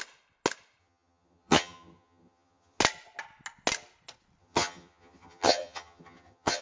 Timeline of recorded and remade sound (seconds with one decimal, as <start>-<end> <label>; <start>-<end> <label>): 0.0-0.8 recorded; 0.8-2.8 remade; 2.8-4.4 recorded; 4.4-6.6 remade